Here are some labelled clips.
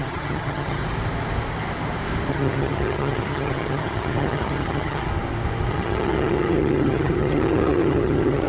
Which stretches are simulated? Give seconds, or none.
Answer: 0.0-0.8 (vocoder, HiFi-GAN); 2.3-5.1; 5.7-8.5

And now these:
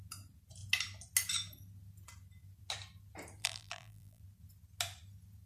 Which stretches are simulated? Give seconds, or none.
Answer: 3.4-4.2 (vocoder, BigVGAN v2)

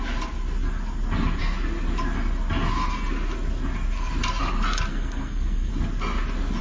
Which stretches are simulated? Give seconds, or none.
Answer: 4.9-5.7 (codec, SNAC)